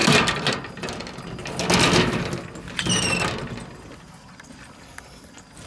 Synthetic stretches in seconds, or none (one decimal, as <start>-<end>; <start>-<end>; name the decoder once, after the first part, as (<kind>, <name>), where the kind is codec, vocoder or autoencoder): none